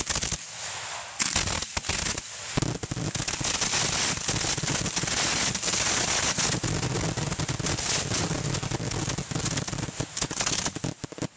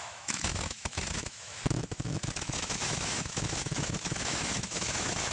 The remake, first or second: second